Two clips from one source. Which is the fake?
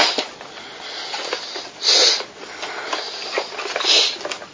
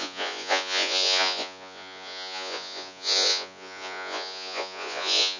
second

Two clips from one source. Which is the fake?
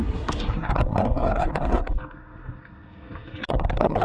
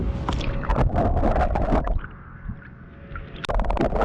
first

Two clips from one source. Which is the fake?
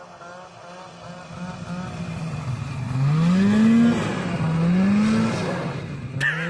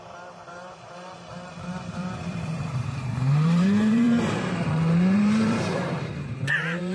second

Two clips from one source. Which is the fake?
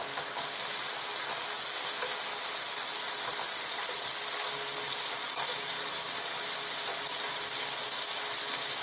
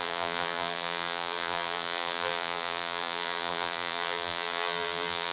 second